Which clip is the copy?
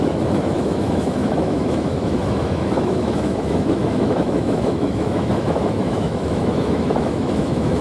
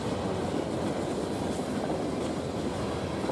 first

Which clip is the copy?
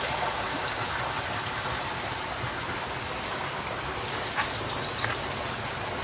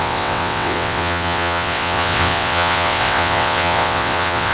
second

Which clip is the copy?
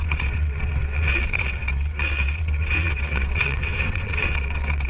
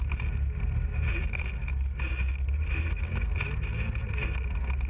first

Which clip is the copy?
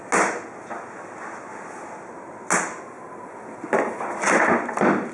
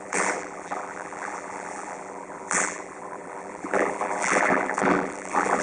second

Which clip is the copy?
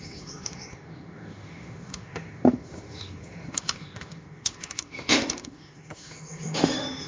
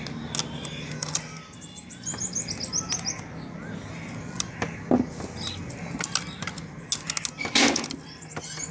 first